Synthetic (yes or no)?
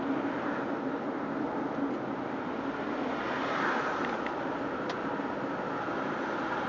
no